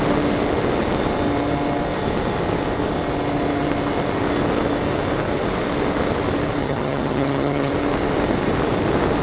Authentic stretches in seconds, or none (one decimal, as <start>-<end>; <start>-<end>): 0.0-6.6; 7.7-9.2